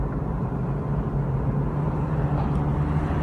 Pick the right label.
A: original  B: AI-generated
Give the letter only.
A